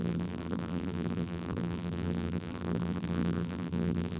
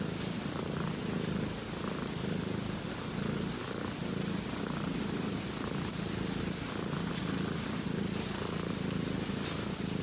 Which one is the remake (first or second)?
first